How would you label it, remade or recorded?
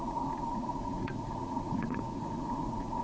remade